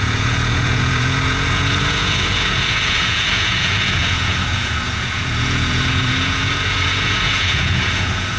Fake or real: fake